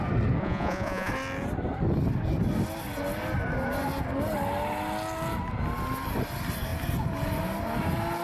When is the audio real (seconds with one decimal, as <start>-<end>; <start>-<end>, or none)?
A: 0.0-0.4; 1.1-8.2